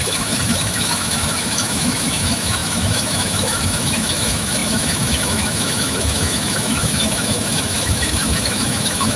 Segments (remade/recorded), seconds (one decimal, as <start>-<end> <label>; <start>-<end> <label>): 0.0-9.2 remade